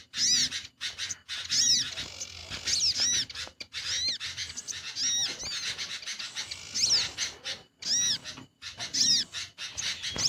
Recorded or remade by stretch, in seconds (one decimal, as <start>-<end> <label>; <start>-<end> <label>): 0.0-10.3 recorded